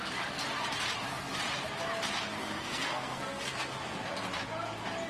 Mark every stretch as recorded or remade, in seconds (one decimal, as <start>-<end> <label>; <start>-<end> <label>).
0.0-2.4 recorded; 2.4-3.7 remade; 3.7-5.1 recorded